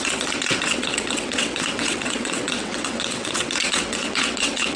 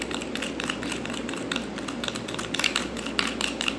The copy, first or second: first